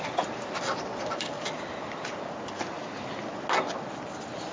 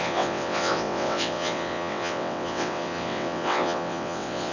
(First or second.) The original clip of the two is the first